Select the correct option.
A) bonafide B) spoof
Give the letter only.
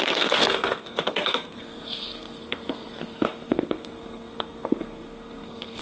B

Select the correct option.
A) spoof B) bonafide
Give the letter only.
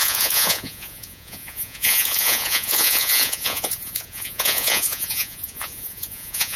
A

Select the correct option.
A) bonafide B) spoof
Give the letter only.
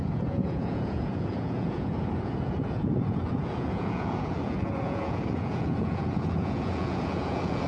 B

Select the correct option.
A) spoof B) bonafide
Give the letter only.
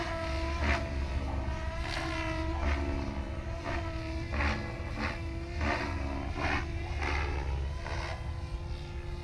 B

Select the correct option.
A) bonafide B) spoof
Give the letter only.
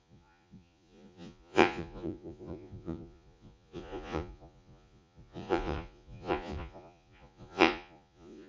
B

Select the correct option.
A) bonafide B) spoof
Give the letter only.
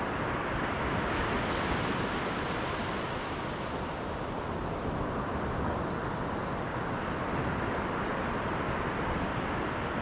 A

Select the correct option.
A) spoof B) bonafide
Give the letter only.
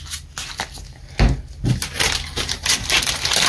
B